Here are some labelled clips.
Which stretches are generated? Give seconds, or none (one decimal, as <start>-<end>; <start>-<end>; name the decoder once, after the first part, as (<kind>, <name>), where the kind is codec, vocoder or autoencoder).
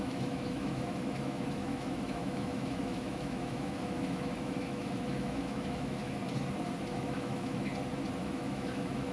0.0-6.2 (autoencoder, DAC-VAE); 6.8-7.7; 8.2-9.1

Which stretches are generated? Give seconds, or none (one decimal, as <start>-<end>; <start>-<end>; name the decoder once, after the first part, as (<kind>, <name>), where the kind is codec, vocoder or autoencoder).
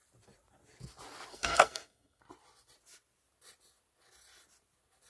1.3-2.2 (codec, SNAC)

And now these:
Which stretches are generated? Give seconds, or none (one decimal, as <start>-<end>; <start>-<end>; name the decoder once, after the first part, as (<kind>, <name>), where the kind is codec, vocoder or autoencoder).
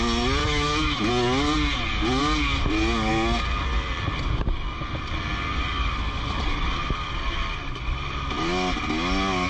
0.4-1.1 (autoencoder, DAC-VAE)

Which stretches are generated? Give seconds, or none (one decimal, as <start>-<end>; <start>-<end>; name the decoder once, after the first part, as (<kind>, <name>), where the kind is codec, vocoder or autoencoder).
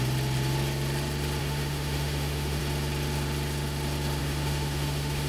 1.4-2.6 (autoencoder, DAC-VAE); 4.2-5.3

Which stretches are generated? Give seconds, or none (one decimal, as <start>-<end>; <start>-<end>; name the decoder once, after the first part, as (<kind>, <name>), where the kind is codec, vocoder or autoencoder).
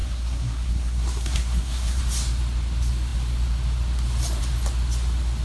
0.0-2.0 (codec, SNAC)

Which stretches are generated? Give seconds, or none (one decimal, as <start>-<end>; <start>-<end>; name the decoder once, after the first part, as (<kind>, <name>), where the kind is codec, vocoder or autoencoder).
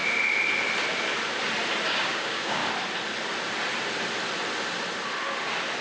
1.9-2.6 (codec, DAC)